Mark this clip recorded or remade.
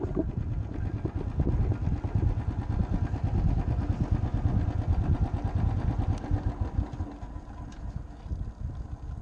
recorded